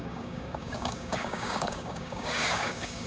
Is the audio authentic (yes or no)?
no